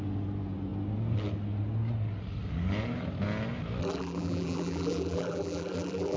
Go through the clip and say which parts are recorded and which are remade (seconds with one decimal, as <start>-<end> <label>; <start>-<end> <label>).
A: 0.0-3.8 recorded; 3.8-6.2 remade